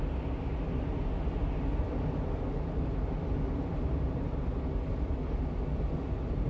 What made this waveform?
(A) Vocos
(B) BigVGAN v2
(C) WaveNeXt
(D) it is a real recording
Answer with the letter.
D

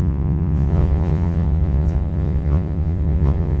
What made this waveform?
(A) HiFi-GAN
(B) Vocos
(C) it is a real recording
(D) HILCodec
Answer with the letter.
B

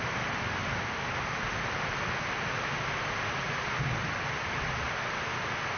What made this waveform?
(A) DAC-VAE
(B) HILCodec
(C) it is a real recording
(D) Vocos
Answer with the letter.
C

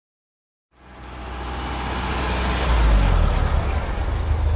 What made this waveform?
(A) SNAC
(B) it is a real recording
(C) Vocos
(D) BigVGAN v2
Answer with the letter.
B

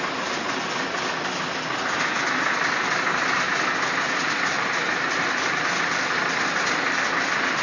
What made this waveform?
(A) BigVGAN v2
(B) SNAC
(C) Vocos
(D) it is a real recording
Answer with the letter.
D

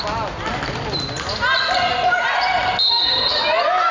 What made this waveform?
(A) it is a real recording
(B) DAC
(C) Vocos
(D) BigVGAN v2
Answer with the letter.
A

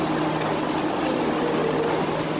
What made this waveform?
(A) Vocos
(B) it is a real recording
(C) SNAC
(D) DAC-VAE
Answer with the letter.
B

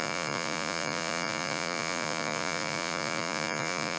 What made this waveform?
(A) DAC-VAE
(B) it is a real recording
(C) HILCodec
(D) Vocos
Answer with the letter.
D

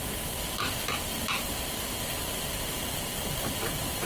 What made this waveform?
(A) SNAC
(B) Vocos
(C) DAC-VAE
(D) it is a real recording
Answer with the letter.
D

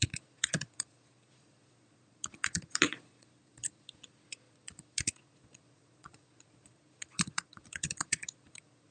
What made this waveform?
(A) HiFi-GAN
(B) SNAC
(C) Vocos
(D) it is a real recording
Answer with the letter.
C